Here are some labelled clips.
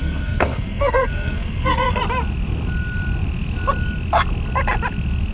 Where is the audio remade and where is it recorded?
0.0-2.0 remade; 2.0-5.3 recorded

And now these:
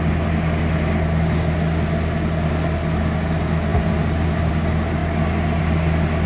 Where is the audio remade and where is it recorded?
0.0-3.7 recorded; 3.7-4.5 remade; 4.5-6.3 recorded

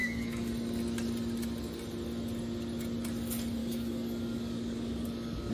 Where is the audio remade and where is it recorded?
0.0-0.5 remade; 0.5-3.6 recorded; 3.6-5.5 remade